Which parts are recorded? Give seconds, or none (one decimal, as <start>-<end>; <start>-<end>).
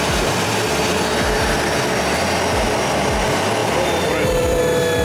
0.0-3.6; 4.6-5.0